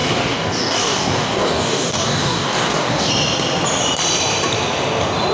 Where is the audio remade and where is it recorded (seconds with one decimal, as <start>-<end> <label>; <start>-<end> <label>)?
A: 0.0-3.1 remade; 3.1-5.3 recorded